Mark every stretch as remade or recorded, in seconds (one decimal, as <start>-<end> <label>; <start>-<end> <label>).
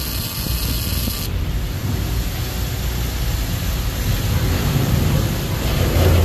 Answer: 0.0-6.2 recorded